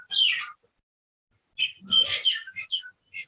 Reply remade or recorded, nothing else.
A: recorded